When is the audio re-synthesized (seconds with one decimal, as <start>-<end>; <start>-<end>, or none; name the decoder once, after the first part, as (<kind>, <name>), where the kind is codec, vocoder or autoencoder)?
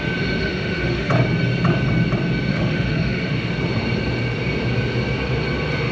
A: 0.4-1.1 (autoencoder, DAC-VAE); 2.5-3.5